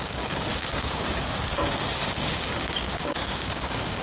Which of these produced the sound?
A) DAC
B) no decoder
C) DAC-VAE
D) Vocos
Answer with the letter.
A